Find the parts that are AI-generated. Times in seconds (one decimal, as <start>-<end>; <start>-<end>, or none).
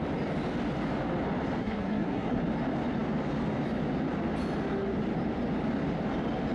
1.6-2.4